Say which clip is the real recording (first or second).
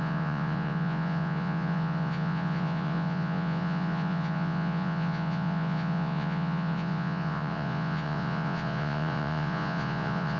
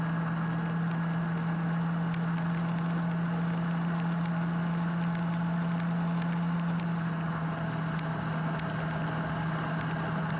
second